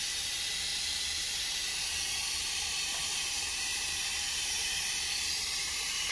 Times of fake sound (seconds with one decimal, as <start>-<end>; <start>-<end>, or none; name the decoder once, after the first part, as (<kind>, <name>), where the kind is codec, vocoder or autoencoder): 0.7-3.3 (vocoder, BigVGAN v2); 3.7-6.1